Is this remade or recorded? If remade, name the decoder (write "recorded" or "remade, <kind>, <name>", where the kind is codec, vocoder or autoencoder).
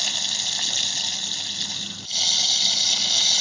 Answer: recorded